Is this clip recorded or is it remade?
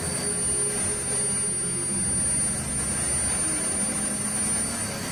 recorded